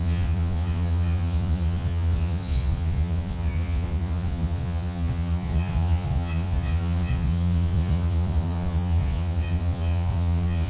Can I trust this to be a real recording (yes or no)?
no